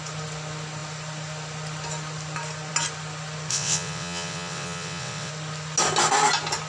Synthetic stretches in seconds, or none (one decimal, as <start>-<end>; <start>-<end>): 3.5-5.3